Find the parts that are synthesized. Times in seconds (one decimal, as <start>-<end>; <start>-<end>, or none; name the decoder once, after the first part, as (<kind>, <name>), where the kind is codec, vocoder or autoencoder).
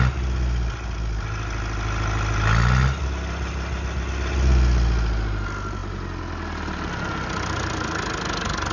none